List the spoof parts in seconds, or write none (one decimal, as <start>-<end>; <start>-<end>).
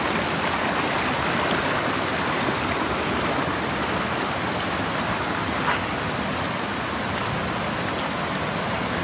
none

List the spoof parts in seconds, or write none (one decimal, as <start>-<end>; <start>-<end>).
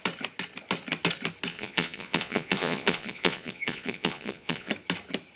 1.5-4.7